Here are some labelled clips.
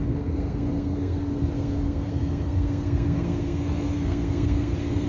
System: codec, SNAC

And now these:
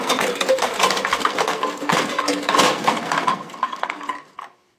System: codec, SNAC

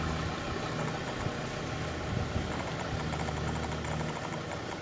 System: none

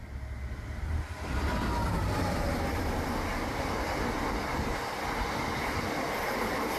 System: none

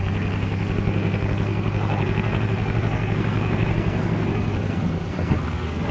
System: codec, SNAC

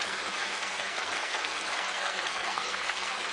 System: codec, SNAC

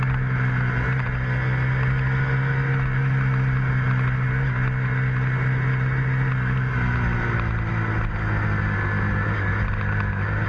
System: none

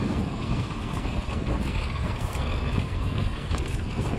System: codec, SNAC